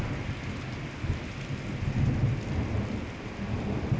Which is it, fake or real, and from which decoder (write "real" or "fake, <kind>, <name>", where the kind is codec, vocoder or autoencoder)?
real